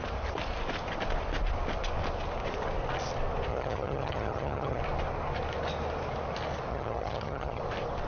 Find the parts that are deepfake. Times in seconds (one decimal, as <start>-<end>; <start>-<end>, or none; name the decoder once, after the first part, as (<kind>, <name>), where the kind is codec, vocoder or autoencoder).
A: 3.5-4.8 (vocoder, HiFi-GAN); 6.7-7.6